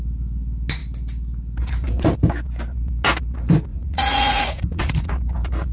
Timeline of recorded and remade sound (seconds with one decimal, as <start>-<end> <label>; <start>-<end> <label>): 0.0-3.7 recorded; 3.7-5.1 remade; 5.1-5.7 recorded